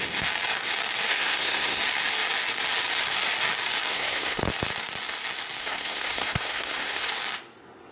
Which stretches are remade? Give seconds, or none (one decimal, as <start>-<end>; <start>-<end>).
1.1-1.8; 3.9-4.4; 5.6-7.1